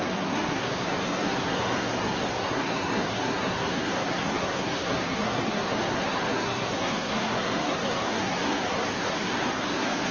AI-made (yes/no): yes